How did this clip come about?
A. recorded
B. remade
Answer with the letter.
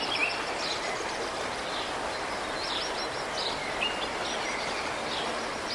A